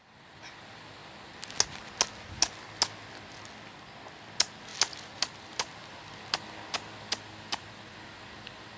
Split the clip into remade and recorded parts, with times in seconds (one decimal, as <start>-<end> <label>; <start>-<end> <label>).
0.0-8.8 recorded